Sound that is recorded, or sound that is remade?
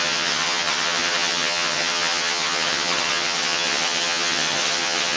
remade